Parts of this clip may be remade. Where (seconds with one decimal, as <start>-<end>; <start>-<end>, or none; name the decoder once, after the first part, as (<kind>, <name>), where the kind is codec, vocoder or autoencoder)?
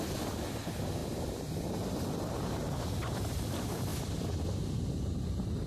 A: 1.0-2.5 (vocoder, BigVGAN v2); 3.9-5.7